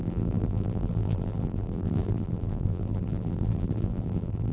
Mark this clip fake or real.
fake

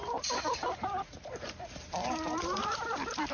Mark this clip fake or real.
fake